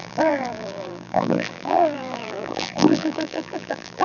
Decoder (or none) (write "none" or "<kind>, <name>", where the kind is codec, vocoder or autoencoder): vocoder, BigVGAN v2